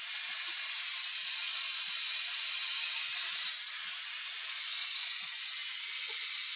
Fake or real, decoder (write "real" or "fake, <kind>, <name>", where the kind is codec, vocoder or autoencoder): real